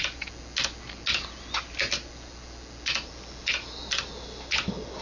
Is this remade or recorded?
recorded